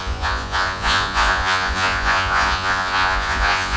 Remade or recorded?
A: remade